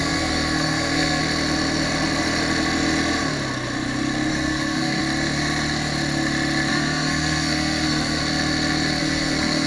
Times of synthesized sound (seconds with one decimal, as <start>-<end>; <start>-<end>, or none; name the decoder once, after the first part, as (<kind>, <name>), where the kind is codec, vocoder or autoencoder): 0.0-1.2 (codec, SNAC); 4.3-5.0; 6.7-8.2; 9.0-9.7